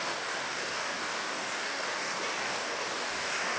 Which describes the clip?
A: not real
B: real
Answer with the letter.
A